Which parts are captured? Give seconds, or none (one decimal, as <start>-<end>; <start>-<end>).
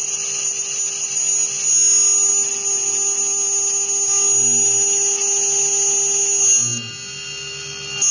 0.0-8.1